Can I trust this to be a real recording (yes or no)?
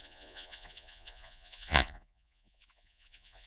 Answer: no